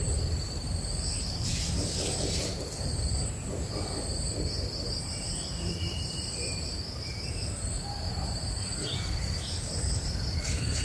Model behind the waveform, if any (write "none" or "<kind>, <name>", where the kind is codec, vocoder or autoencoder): vocoder, BigVGAN v2